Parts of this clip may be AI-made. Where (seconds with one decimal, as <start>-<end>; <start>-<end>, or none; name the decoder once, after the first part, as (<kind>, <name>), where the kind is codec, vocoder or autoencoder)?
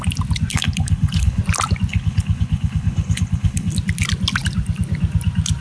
0.5-1.4 (codec, HILCodec); 1.9-3.7